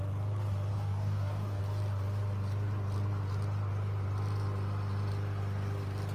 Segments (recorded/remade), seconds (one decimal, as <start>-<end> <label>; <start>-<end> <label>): 0.0-0.7 recorded; 0.7-1.6 remade; 1.6-6.1 recorded